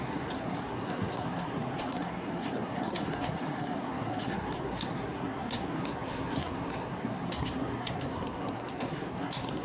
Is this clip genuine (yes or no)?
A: no